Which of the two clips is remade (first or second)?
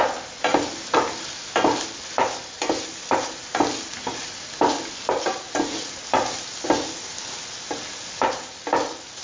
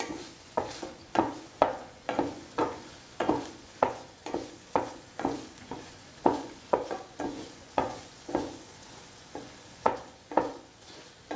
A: second